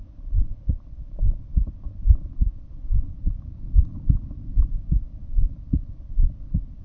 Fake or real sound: fake